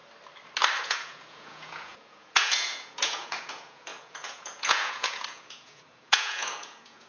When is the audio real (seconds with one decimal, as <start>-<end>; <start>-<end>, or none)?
0.0-0.8